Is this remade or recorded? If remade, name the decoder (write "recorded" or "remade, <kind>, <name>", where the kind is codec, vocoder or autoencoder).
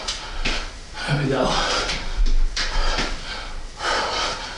recorded